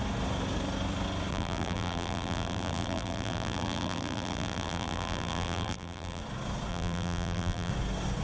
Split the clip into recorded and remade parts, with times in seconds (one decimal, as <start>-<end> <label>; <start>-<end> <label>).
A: 0.0-1.3 recorded; 1.3-6.2 remade; 6.2-6.7 recorded; 6.7-7.7 remade; 7.7-8.2 recorded